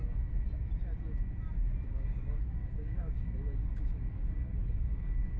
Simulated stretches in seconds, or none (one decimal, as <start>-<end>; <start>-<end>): 1.9-5.4